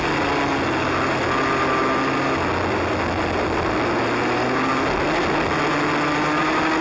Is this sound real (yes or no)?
yes